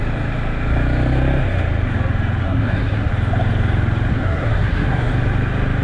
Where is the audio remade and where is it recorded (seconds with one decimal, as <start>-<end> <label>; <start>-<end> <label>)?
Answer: 0.0-2.4 recorded; 2.4-3.1 remade; 3.1-4.1 recorded; 4.1-5.1 remade; 5.1-5.8 recorded